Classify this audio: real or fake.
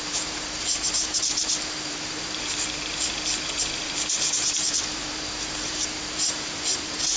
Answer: fake